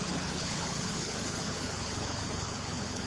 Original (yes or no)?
no